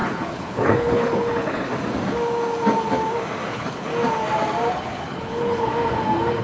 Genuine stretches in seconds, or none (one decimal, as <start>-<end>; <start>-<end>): 1.7-3.5; 3.9-4.7; 5.7-6.4